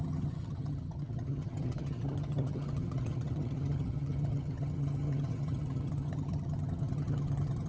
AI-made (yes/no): yes